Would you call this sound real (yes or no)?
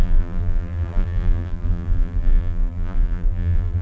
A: no